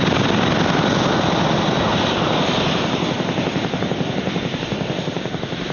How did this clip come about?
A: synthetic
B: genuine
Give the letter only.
B